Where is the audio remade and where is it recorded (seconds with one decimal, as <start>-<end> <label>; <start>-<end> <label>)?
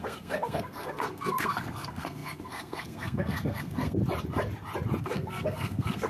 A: 0.0-4.0 remade; 4.0-5.0 recorded; 5.0-6.1 remade